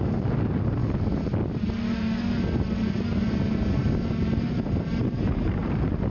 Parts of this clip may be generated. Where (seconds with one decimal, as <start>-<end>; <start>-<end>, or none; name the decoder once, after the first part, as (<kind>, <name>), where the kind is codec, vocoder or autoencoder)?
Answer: 0.0-0.8 (vocoder, BigVGAN v2); 4.5-6.1

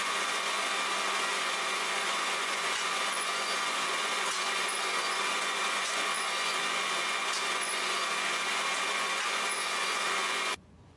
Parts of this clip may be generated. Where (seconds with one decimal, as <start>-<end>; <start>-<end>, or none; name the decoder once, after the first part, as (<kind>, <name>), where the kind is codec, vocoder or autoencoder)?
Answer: 0.0-0.7 (vocoder, Vocos); 1.2-11.0